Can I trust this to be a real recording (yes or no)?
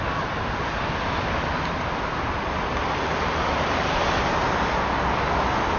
yes